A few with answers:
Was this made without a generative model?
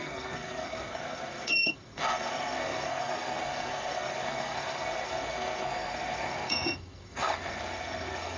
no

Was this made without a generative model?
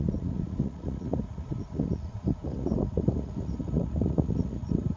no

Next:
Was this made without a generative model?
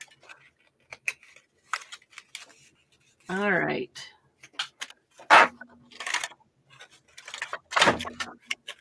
yes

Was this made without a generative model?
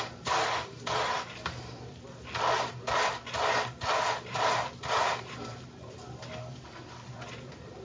yes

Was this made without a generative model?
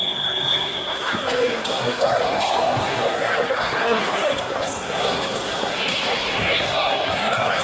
no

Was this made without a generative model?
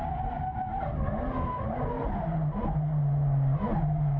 yes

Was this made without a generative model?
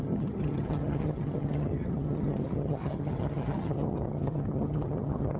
no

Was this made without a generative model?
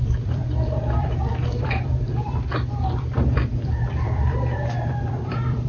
no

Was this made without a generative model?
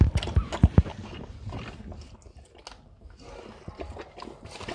yes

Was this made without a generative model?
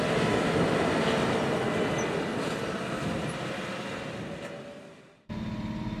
yes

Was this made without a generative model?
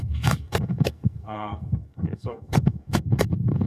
no